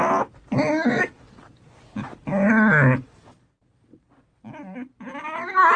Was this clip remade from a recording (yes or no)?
no